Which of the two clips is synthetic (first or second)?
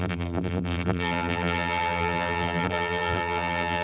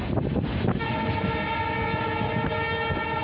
first